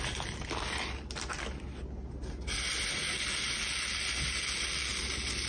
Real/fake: real